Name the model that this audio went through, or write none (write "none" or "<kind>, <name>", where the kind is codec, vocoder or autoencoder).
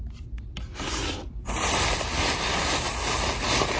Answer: none